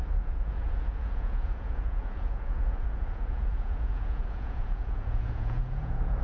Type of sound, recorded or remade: remade